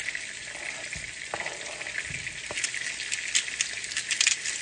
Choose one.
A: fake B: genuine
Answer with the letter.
B